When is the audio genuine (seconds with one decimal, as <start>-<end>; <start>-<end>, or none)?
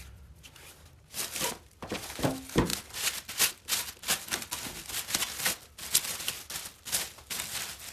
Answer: 0.0-7.9